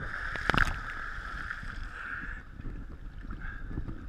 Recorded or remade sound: recorded